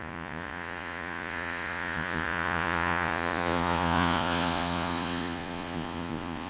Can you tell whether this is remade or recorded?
remade